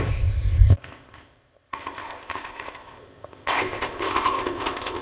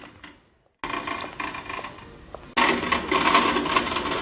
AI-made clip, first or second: first